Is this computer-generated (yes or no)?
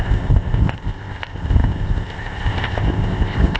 yes